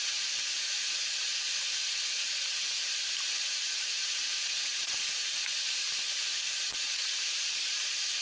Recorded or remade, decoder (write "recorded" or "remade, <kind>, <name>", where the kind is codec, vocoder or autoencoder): remade, vocoder, BigVGAN v2